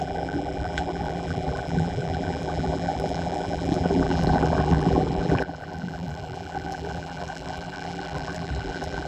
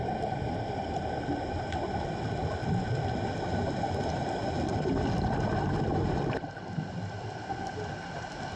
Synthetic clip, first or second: first